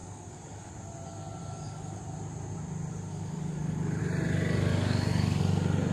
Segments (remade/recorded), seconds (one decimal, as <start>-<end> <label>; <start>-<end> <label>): 0.0-0.7 remade; 0.7-1.4 recorded; 1.4-2.0 remade; 2.0-3.1 recorded; 3.1-4.0 remade; 4.0-4.7 recorded; 4.7-5.4 remade; 5.4-5.9 recorded